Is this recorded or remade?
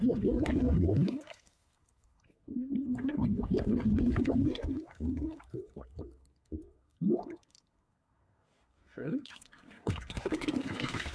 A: remade